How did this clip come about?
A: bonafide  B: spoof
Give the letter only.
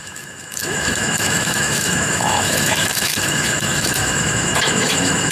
B